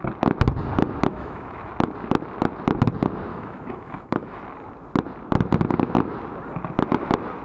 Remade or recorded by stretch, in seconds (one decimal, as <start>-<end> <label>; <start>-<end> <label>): 0.0-1.1 recorded; 1.1-1.7 remade; 1.7-3.3 recorded; 3.3-4.4 remade; 4.4-7.4 recorded